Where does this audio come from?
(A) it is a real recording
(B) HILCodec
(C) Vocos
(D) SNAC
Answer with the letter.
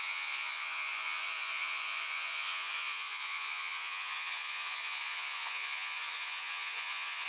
C